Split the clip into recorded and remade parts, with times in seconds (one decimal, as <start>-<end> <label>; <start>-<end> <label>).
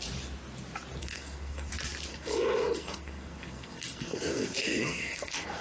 0.0-1.0 recorded; 1.0-1.7 remade; 1.7-2.1 recorded; 2.1-5.6 remade